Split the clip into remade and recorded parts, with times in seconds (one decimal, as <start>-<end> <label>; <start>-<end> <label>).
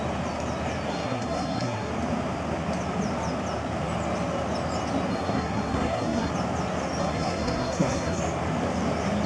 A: 0.0-0.9 recorded; 0.9-1.9 remade; 1.9-5.1 recorded; 5.1-6.3 remade; 6.3-7.0 recorded; 7.0-8.2 remade; 8.2-9.3 recorded